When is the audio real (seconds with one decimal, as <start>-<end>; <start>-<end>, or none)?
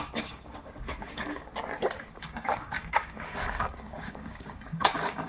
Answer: 1.5-2.1